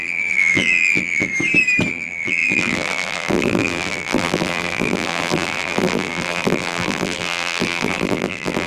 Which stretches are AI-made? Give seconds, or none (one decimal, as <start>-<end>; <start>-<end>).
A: 0.0-1.3; 1.9-8.7